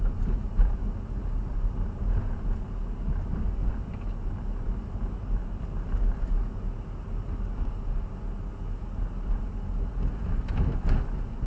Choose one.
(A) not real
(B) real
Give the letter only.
B